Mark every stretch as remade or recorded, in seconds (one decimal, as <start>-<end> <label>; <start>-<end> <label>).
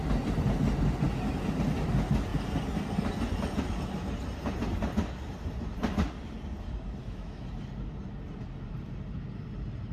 0.0-7.0 recorded; 7.0-7.5 remade; 7.5-9.9 recorded